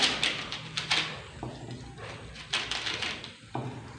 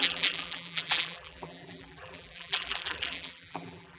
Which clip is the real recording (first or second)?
first